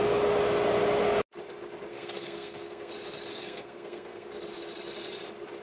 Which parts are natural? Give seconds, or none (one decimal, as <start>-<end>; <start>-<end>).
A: 0.0-1.9; 2.9-3.3; 4.3-5.6

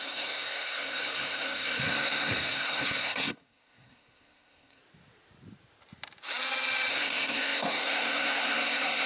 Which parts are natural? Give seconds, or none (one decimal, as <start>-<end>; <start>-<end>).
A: 4.8-6.9

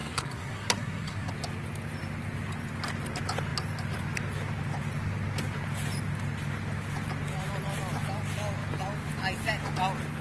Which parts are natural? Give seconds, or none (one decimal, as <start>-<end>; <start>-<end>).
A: 1.3-10.2

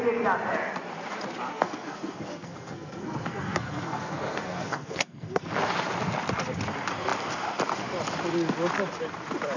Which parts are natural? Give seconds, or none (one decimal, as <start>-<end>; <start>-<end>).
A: 0.0-1.5; 5.5-9.6

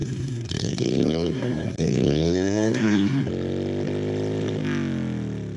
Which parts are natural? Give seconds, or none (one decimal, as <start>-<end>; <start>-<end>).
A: 3.3-5.6

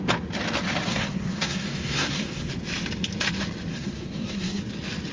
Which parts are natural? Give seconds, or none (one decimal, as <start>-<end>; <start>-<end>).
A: 0.0-0.9; 2.5-3.7; 4.6-5.1

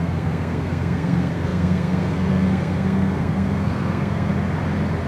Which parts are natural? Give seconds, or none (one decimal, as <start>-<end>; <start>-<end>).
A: 4.3-5.1